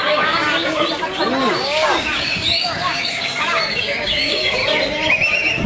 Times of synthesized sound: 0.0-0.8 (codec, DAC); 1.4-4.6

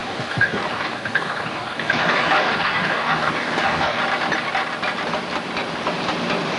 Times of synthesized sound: 0.0-4.0 (codec, DAC)

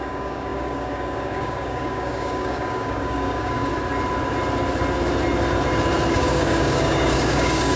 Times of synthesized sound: 0.0-3.7 (codec, DAC); 6.1-7.8

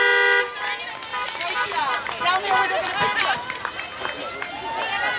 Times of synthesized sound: none

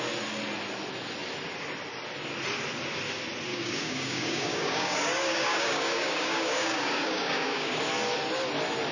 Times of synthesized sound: 3.5-7.8 (codec, DAC)

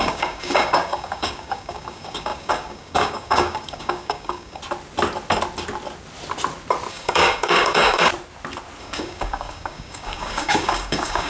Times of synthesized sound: 0.0-4.6 (codec, DAC); 6.9-8.1; 8.8-11.3

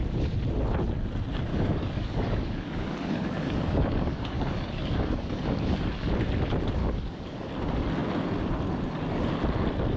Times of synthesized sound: 1.5-6.1 (codec, DAC); 6.8-7.5

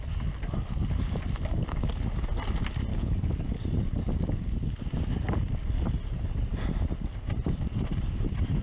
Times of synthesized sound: 2.9-3.6 (codec, DAC)